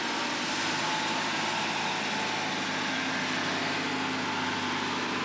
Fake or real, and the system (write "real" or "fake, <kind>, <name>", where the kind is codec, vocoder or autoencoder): real